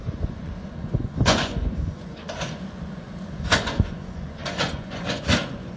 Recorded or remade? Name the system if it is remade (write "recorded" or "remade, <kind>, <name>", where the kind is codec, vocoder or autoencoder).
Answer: remade, vocoder, Vocos